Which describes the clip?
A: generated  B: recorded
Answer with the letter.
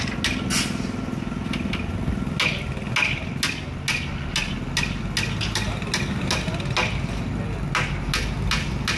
B